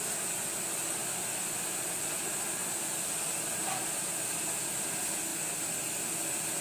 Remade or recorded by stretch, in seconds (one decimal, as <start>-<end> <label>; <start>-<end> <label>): 0.0-6.6 recorded